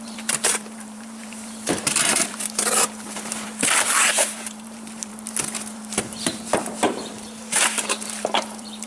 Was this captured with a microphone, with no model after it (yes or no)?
no